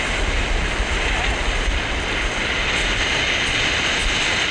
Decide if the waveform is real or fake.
real